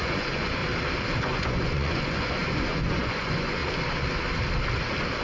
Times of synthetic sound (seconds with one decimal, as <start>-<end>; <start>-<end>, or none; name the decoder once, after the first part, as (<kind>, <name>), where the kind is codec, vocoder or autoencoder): 0.0-0.6 (vocoder, Vocos); 1.2-3.6